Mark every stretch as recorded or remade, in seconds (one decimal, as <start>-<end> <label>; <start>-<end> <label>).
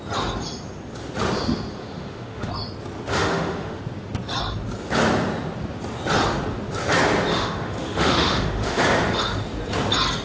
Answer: 0.0-1.8 recorded; 1.8-2.5 remade; 2.5-3.1 recorded; 3.1-3.8 remade; 3.8-7.3 recorded; 7.3-8.8 remade; 8.8-10.2 recorded